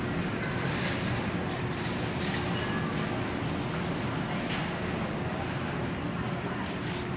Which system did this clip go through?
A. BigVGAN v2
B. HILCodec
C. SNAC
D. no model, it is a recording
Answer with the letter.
D